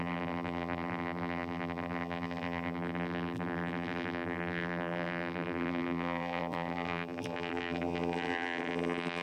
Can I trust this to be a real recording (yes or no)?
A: no